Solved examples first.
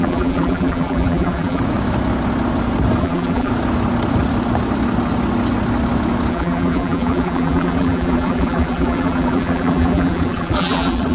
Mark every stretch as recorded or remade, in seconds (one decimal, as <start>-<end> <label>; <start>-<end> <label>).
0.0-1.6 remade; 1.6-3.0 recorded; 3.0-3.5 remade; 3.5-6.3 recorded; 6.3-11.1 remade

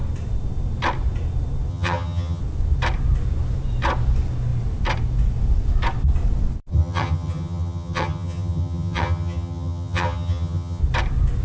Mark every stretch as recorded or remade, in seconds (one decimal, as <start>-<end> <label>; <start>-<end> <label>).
0.0-1.7 recorded; 1.7-2.4 remade; 2.4-6.7 recorded; 6.7-10.8 remade; 10.8-11.4 recorded

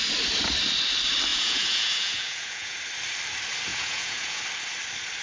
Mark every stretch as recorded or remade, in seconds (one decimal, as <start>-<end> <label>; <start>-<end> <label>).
0.0-1.3 recorded; 1.3-2.8 remade; 2.8-3.7 recorded; 3.7-4.4 remade; 4.4-5.2 recorded